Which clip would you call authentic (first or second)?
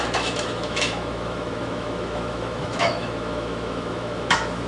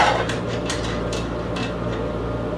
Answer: second